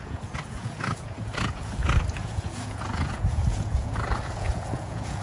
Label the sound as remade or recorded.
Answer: remade